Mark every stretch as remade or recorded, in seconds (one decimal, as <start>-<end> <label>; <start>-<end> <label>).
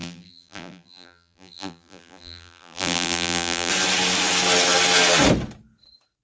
0.0-3.7 remade; 3.7-6.2 recorded